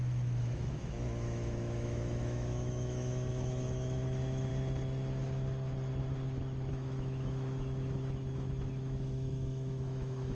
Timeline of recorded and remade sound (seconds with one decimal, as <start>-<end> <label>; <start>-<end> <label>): 0.0-4.5 remade; 4.5-6.7 recorded; 6.7-10.3 remade